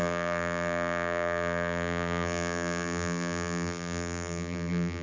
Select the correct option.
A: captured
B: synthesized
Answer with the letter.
B